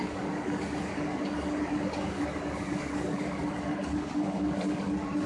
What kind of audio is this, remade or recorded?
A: remade